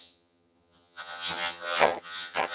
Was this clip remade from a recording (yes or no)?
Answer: yes